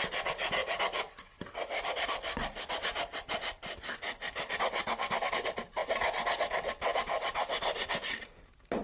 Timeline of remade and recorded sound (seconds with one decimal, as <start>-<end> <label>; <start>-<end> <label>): 0.0-8.8 recorded